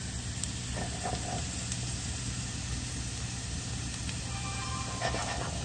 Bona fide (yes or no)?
yes